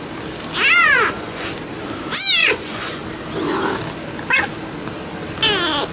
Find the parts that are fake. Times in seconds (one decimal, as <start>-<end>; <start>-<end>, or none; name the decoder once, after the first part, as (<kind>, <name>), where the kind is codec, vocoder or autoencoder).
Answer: 0.8-1.5 (vocoder, Vocos); 2.4-3.0